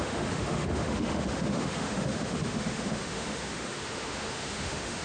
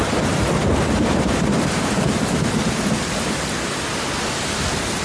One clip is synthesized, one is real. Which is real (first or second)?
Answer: second